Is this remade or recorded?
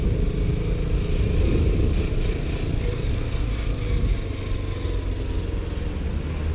recorded